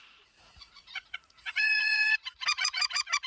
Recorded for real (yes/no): no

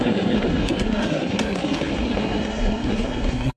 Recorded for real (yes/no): no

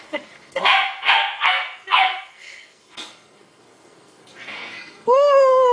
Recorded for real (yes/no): no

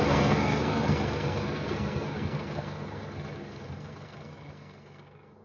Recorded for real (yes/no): no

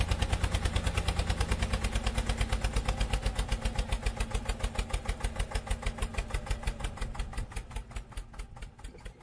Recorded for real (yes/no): yes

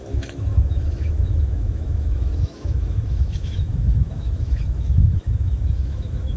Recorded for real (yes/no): no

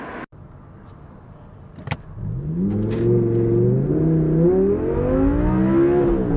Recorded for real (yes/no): yes